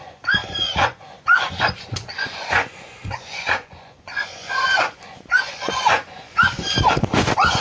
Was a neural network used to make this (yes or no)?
yes